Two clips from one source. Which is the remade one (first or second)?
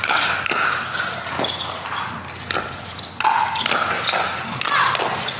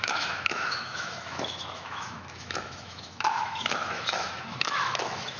second